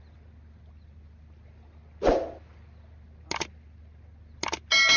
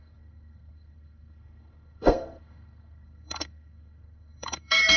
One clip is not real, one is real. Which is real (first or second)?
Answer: first